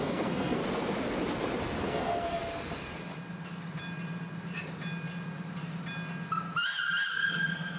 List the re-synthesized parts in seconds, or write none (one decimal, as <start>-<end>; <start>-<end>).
0.0-0.6; 1.8-2.4; 7.1-7.8